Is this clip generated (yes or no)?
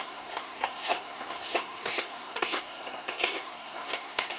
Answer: yes